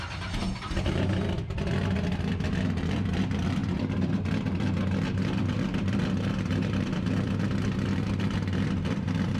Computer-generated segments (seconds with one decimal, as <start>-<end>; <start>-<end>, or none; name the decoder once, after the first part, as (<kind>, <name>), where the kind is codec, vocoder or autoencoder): 0.0-9.4 (vocoder, BigVGAN v2)